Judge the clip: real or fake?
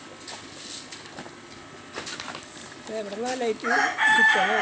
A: real